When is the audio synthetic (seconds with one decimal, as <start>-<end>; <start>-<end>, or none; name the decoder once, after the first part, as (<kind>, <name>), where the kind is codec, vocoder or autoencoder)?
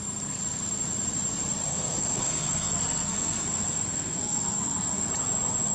1.7-5.1 (codec, SNAC)